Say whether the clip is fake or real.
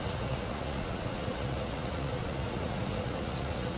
fake